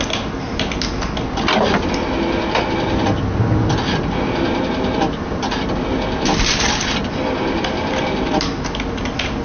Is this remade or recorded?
recorded